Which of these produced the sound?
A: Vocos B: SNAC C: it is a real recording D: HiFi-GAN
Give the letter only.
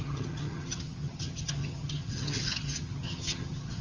D